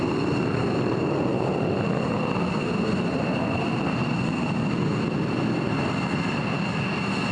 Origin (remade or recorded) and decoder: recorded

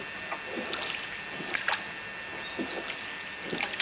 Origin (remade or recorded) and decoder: recorded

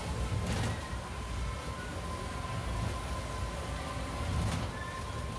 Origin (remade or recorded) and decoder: recorded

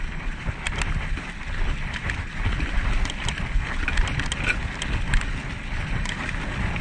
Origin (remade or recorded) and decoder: recorded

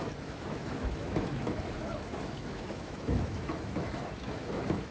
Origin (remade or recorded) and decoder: remade, autoencoder, DAC-VAE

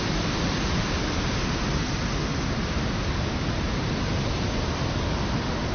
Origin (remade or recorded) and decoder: recorded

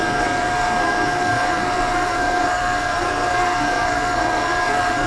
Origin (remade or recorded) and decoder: remade, codec, SNAC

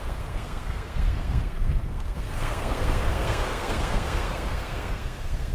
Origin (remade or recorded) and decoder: remade, codec, SNAC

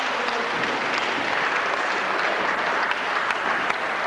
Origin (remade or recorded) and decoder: recorded